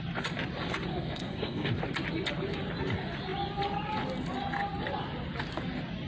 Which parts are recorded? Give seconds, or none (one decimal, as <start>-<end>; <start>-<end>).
0.0-0.9; 1.8-6.1